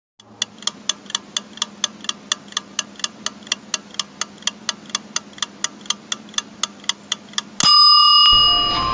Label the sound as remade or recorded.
recorded